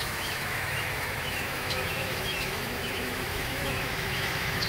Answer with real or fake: fake